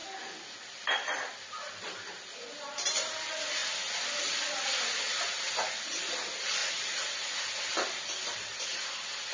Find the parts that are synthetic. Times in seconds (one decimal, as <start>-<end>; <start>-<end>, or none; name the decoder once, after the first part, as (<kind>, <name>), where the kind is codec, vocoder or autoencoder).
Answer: 6.6-7.4 (vocoder, Vocos)